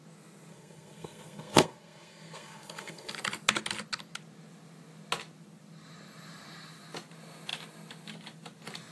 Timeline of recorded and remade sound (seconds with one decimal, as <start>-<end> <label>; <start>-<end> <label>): 0.0-0.5 recorded; 0.5-3.1 remade; 3.1-8.9 recorded

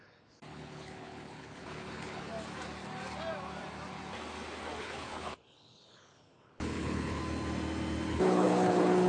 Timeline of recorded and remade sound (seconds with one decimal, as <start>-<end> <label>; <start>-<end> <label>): 0.0-2.3 remade; 2.3-4.8 recorded; 4.8-7.2 remade; 7.2-8.1 recorded; 8.1-9.1 remade

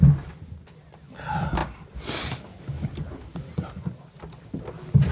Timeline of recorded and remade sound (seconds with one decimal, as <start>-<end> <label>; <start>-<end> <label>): 0.0-5.1 recorded